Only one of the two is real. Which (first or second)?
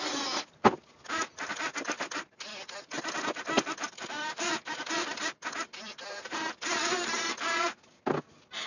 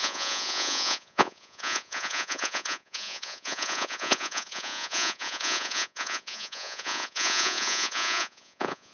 first